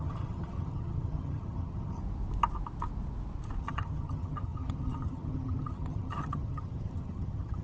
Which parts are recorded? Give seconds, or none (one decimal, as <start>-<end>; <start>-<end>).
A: 2.0-3.6